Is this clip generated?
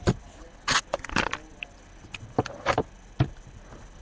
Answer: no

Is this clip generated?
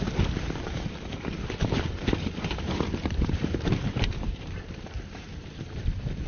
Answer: yes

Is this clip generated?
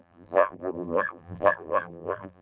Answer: yes